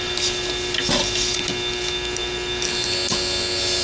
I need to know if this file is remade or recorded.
recorded